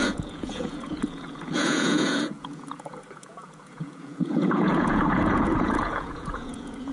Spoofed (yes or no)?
yes